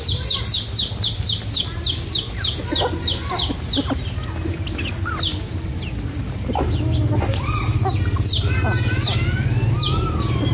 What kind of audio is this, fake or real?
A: real